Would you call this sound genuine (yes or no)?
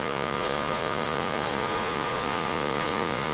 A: no